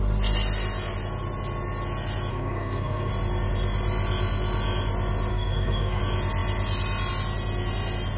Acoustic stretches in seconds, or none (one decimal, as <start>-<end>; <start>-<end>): 0.0-2.3; 3.1-5.3; 6.0-8.2